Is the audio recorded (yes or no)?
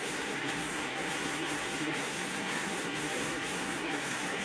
no